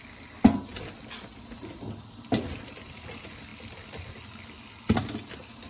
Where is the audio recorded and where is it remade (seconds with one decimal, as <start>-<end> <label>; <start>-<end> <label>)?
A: 0.0-5.7 recorded